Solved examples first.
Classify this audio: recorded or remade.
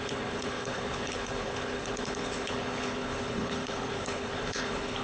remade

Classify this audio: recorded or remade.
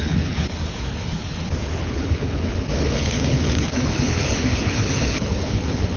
remade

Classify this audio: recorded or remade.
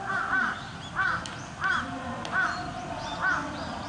recorded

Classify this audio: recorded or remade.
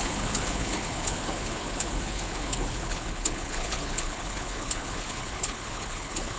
remade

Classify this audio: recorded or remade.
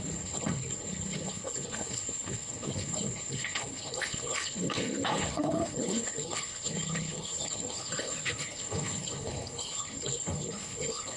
remade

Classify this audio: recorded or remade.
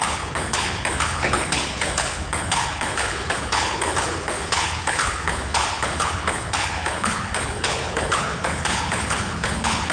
remade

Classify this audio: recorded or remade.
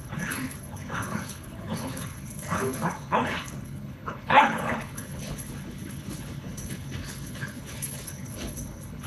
remade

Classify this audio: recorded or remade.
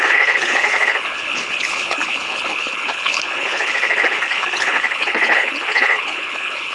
remade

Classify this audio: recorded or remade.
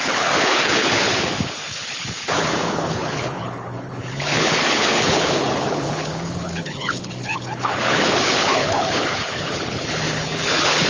remade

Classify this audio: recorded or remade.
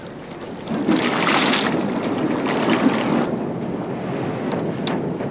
recorded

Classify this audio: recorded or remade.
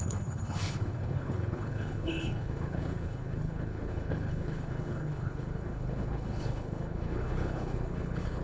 remade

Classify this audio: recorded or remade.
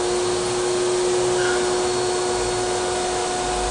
recorded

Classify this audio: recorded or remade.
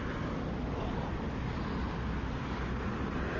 recorded